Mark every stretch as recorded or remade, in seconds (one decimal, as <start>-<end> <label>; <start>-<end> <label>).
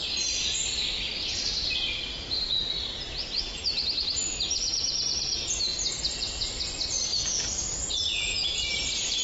0.0-7.1 recorded; 7.1-8.7 remade; 8.7-9.2 recorded